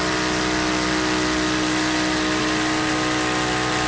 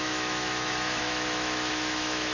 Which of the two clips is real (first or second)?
first